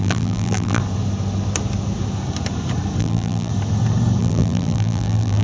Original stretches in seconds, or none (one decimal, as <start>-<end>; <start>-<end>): 0.8-3.0; 3.5-4.2